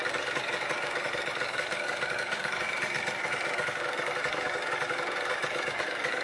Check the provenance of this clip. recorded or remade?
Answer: remade